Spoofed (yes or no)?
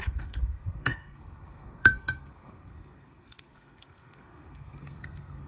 yes